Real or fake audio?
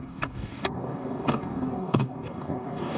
fake